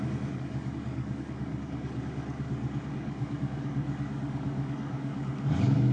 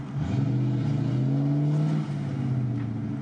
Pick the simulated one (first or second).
first